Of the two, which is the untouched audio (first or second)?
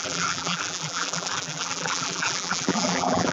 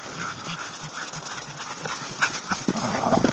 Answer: second